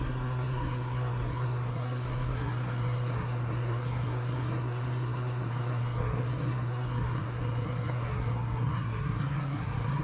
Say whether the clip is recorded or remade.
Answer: remade